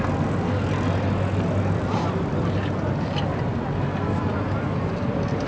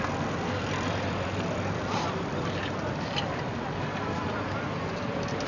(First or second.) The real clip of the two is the first